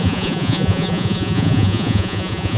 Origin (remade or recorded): remade